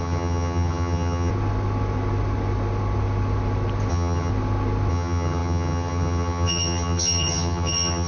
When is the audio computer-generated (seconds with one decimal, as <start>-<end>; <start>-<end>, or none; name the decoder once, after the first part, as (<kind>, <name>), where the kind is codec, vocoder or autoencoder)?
0.0-1.3 (vocoder, HiFi-GAN); 3.9-4.3; 4.9-8.1